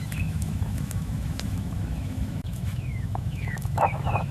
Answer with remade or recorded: remade